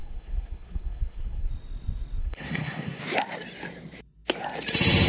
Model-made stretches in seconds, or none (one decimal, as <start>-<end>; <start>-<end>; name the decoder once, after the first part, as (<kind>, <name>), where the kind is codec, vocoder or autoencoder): 0.0-1.5 (codec, SNAC); 2.2-3.0